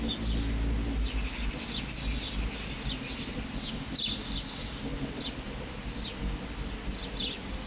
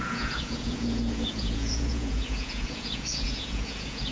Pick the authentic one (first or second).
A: first